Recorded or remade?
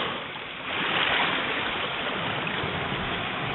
recorded